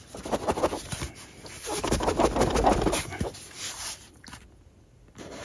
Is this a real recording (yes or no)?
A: yes